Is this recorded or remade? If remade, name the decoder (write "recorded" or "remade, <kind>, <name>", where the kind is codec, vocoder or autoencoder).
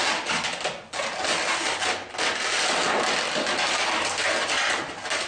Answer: recorded